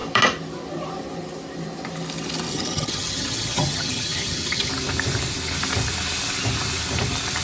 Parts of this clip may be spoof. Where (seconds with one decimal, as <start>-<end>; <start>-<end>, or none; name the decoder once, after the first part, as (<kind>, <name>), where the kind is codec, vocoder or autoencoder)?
2.5-4.7 (vocoder, HiFi-GAN)